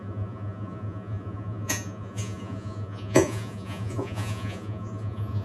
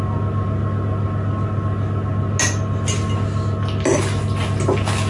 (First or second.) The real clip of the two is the second